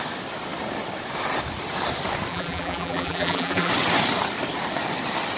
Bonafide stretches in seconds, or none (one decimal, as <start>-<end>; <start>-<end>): 0.0-2.3; 3.7-5.4